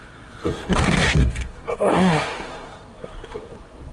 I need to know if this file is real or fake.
fake